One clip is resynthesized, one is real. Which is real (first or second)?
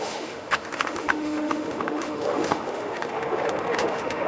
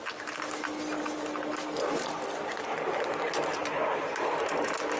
second